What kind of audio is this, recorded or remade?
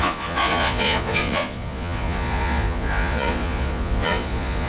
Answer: remade